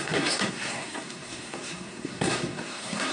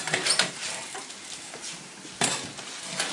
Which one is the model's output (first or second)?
first